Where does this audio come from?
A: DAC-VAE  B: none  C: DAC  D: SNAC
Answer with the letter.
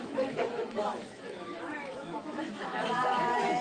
A